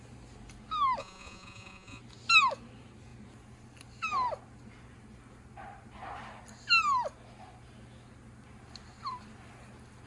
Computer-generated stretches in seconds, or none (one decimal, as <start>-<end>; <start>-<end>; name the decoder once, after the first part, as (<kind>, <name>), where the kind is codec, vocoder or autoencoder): 1.0-2.0 (vocoder, Vocos)